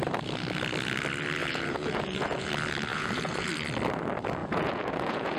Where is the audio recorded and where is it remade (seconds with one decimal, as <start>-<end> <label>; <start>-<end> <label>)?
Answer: 0.0-1.4 recorded; 1.4-2.5 remade; 2.5-2.9 recorded; 2.9-3.5 remade; 3.5-4.4 recorded; 4.4-5.4 remade